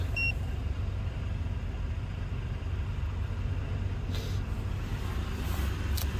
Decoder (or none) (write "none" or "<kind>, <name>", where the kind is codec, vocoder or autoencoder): none